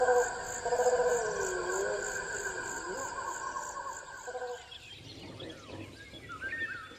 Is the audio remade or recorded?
recorded